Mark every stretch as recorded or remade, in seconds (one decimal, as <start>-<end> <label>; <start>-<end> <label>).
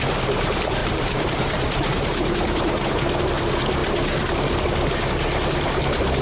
0.0-0.8 recorded; 0.8-3.2 remade; 3.2-3.8 recorded; 3.8-4.7 remade; 4.7-6.2 recorded